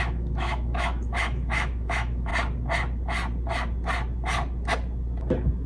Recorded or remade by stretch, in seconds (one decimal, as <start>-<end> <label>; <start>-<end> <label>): 0.0-2.3 remade; 2.3-5.7 recorded